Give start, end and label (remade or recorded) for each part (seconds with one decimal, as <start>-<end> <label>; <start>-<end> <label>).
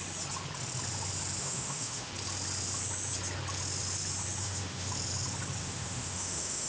0.0-1.4 recorded; 1.4-2.1 remade; 2.1-4.4 recorded; 4.4-4.9 remade; 4.9-5.6 recorded; 5.6-6.7 remade